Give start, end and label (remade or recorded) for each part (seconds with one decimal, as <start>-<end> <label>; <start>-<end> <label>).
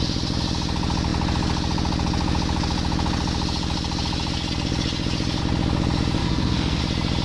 0.0-6.2 recorded; 6.2-6.8 remade; 6.8-7.2 recorded